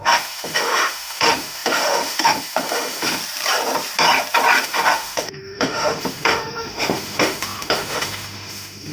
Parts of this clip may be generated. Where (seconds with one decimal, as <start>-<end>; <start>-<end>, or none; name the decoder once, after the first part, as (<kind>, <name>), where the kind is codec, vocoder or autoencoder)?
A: 0.0-3.2 (autoencoder, DAC-VAE); 4.6-8.9